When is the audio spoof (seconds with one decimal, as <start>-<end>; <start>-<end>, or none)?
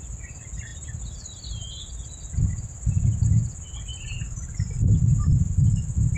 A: 0.7-2.5; 3.9-5.0